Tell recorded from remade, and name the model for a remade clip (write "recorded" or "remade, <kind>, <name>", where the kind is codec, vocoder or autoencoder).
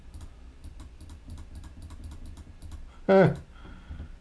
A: recorded